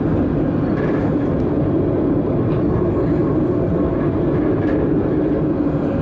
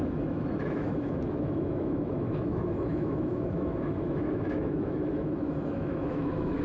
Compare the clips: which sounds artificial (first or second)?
second